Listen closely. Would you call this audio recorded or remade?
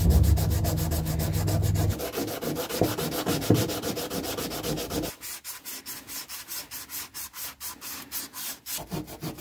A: recorded